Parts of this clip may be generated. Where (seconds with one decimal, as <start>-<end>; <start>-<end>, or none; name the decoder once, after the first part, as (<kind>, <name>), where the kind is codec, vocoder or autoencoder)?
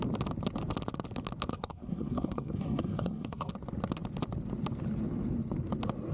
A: 1.5-3.5 (codec, SNAC)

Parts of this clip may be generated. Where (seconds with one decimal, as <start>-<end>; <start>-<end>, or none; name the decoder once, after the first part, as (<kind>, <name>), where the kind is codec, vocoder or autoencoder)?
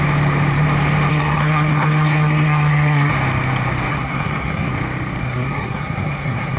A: 1.1-3.1 (codec, SNAC); 3.9-4.7; 5.2-6.6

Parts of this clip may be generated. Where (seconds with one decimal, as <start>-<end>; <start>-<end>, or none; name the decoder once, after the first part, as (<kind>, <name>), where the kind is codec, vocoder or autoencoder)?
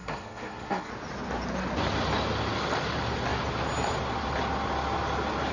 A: 0.0-0.9 (codec, SNAC)